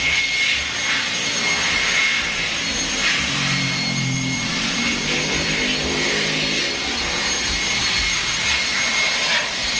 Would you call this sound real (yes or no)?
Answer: no